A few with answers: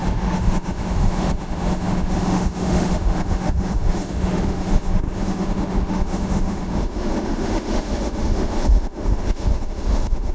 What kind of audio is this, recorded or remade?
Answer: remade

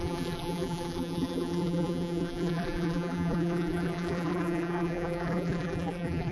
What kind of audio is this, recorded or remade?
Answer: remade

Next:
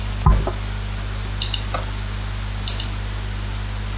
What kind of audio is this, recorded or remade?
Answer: recorded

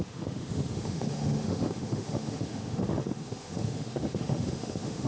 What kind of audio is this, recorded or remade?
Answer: remade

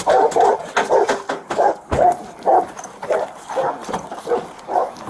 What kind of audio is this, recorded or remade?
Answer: recorded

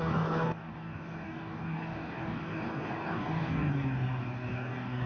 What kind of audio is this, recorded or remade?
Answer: remade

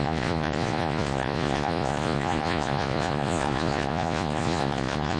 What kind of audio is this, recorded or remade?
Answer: remade